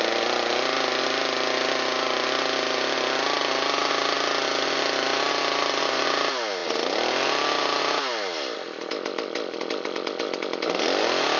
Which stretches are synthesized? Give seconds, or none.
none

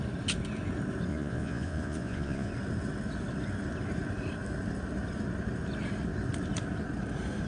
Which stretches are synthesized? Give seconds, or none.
1.1-2.5